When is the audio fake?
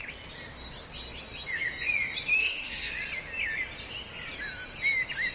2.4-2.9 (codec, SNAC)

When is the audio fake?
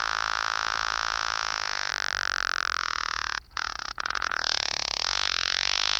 0.0-1.9 (vocoder, Vocos); 2.8-6.0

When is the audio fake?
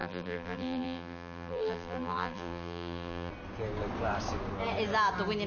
0.0-3.3 (vocoder, BigVGAN v2)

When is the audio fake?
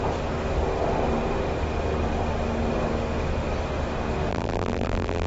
4.3-5.3 (vocoder, BigVGAN v2)